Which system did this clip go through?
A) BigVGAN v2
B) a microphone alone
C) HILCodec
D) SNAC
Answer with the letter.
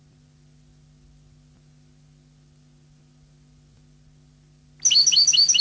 B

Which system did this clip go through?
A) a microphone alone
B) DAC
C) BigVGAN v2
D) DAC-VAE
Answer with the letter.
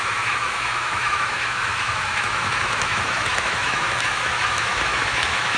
D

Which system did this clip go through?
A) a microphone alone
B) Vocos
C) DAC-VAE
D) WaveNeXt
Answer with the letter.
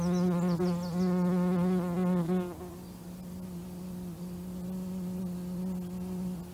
A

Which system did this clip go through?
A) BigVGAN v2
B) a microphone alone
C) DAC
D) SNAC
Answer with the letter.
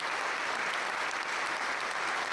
B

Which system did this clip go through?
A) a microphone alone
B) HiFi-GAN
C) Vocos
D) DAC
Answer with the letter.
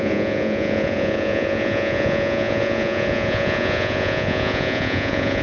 C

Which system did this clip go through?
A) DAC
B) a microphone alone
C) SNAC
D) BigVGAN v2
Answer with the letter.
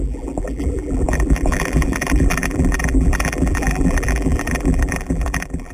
D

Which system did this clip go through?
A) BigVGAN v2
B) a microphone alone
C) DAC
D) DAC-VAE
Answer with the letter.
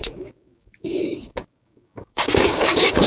C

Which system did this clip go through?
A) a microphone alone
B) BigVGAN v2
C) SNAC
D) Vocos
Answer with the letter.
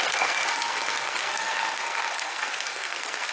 C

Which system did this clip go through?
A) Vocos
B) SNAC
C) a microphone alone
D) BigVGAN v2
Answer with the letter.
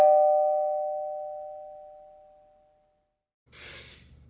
C